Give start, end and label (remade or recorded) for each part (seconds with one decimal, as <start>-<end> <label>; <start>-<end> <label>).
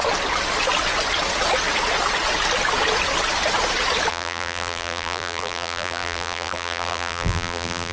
0.0-4.1 recorded; 4.1-7.9 remade